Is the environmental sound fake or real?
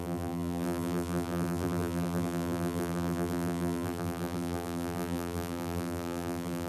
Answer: fake